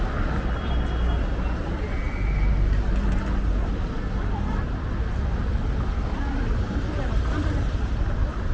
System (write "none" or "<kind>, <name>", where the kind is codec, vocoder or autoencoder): none